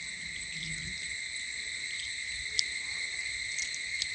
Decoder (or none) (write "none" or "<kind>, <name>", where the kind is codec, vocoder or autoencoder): none